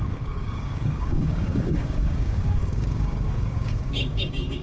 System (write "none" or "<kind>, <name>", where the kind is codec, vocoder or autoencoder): codec, DAC